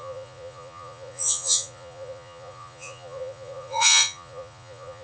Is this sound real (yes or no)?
no